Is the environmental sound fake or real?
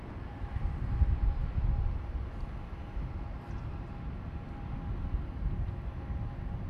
real